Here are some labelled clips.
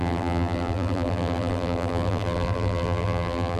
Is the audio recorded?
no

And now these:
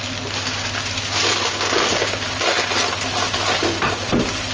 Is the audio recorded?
yes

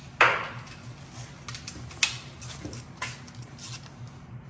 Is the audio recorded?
yes